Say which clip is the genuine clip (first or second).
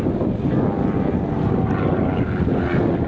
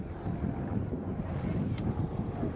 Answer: first